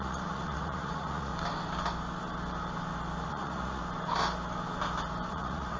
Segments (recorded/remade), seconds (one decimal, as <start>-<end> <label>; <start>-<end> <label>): 0.0-1.3 remade; 1.3-3.3 recorded; 3.3-3.8 remade; 3.8-5.3 recorded; 5.3-5.8 remade